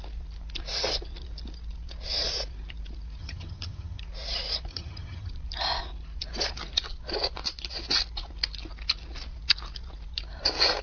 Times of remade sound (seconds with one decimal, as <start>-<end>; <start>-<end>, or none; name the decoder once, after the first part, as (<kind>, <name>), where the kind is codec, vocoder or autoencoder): 3.2-4.0 (vocoder, HiFi-GAN); 4.7-5.3